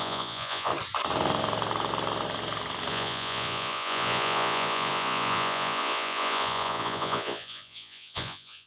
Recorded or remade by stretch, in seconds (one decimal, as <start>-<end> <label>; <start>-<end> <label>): 0.0-0.7 remade; 0.7-2.9 recorded; 2.9-8.7 remade